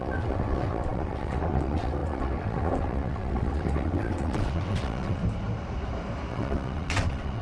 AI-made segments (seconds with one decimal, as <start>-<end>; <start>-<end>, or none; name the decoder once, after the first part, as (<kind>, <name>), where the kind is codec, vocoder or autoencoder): 0.0-5.2 (vocoder, WaveNeXt); 6.3-7.4

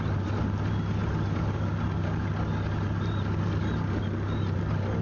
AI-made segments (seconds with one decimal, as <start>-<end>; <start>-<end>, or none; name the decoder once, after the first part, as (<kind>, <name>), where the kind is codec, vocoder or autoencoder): none

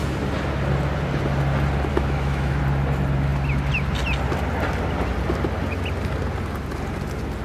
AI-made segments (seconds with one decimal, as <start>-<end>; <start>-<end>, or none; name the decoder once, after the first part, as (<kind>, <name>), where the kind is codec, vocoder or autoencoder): 1.9-2.6 (autoencoder, DAC-VAE)

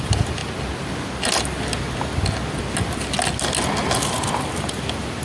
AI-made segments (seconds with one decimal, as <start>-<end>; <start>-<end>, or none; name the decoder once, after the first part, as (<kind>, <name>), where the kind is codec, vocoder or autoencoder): none